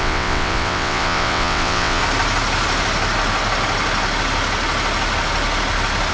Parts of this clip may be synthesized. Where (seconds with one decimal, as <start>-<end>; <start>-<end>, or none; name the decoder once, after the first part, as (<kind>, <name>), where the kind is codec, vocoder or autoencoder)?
0.0-2.0 (vocoder, WaveNeXt)